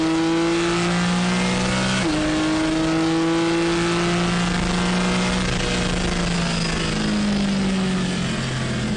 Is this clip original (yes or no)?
yes